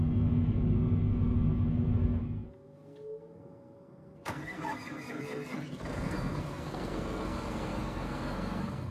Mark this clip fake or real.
fake